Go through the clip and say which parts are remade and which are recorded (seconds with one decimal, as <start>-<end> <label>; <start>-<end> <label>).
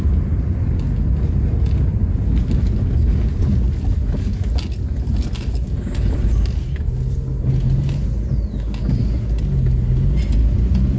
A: 0.0-11.0 recorded